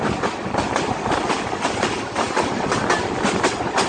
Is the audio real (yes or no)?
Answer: yes